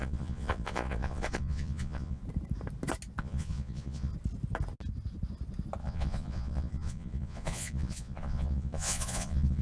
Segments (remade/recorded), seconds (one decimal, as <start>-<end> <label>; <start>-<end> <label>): 0.0-2.2 remade; 2.2-3.2 recorded; 3.2-4.1 remade; 4.1-5.8 recorded; 5.8-9.6 remade